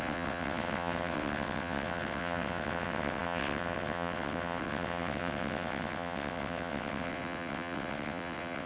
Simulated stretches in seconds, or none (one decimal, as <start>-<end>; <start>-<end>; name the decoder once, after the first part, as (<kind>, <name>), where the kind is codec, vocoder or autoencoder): 0.0-8.7 (vocoder, WaveNeXt)